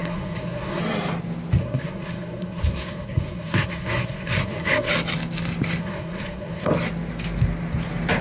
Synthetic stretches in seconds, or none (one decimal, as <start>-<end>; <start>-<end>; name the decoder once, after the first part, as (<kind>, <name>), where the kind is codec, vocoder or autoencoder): 0.0-0.8 (codec, SNAC); 1.6-4.9; 5.8-6.7